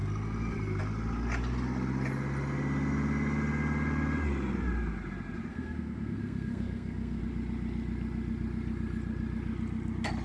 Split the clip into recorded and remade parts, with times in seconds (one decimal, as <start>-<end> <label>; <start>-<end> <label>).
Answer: 0.0-5.5 recorded; 5.5-7.2 remade; 7.2-10.2 recorded